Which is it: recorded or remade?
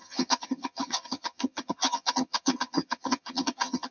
remade